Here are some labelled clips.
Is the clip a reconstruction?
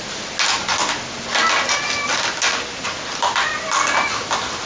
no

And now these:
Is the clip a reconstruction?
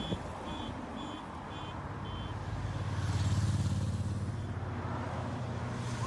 no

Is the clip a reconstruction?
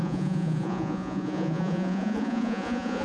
yes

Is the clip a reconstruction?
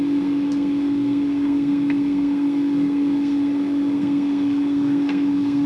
yes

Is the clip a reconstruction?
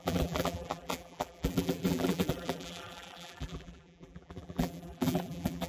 yes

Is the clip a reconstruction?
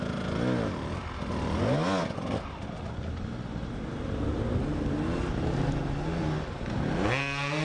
no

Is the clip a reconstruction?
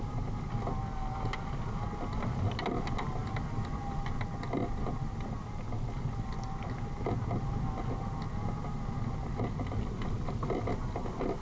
no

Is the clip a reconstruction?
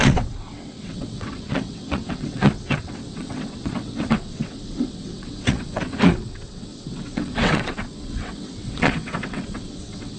yes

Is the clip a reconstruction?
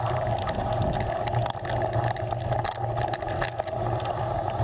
no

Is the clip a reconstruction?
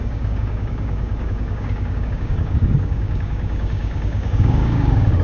yes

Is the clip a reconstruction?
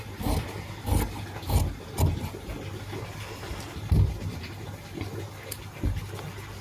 no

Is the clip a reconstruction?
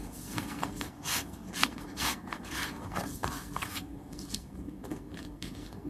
yes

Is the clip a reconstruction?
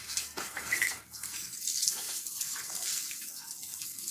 yes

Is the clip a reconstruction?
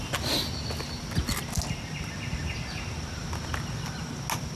no